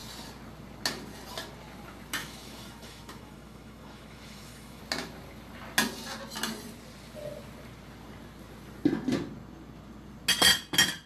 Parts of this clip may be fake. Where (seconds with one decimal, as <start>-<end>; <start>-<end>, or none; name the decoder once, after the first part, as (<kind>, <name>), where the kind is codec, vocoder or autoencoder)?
2.2-4.8 (autoencoder, DAC-VAE)